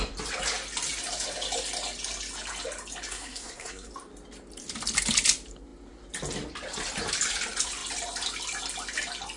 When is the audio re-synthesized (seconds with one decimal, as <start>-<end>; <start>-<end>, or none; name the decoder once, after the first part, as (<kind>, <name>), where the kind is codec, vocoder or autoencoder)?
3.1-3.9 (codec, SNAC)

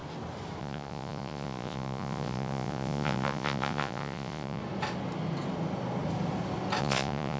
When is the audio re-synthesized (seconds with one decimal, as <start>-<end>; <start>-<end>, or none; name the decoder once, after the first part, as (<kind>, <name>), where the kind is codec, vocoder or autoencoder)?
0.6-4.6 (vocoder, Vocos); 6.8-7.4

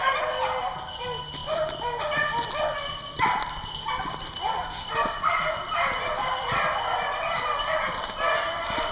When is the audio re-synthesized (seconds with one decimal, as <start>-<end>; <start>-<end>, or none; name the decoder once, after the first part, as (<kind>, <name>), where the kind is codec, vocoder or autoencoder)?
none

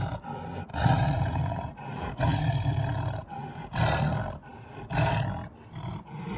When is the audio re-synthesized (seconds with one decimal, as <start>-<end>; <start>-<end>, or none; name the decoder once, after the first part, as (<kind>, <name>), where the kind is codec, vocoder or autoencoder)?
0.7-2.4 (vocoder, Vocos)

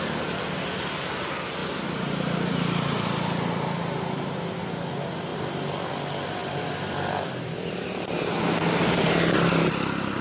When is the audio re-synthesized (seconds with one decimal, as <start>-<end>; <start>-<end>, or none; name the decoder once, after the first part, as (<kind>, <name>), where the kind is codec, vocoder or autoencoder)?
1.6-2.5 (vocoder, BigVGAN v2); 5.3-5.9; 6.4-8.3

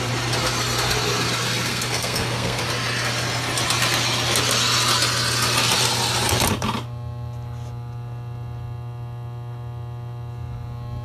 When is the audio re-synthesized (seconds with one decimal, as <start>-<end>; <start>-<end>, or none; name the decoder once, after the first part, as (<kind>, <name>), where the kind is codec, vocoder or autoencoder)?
1.7-2.6 (codec, SNAC)

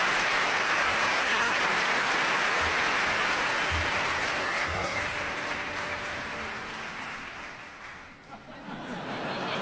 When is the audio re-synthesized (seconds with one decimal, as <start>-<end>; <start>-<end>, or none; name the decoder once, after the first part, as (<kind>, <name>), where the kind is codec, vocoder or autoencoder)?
0.8-1.6 (codec, SNAC); 4.4-5.0